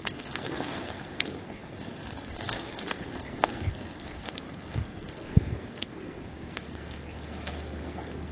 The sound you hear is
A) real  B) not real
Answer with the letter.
B